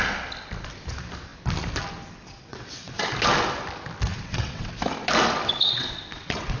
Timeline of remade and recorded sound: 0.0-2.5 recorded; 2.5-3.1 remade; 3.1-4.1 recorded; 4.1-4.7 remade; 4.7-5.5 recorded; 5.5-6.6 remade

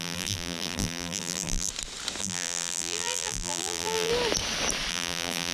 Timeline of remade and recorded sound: 0.0-1.7 remade; 1.7-2.2 recorded; 2.2-4.1 remade; 4.1-4.9 recorded; 4.9-5.5 remade